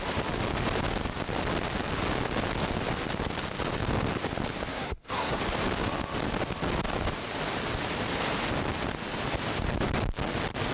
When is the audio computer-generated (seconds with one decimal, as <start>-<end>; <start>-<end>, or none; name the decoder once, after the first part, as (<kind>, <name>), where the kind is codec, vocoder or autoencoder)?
4.7-5.4 (codec, SNAC)